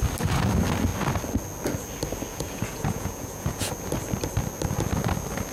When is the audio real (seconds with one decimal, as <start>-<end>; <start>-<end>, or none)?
0.0-2.3; 3.7-5.5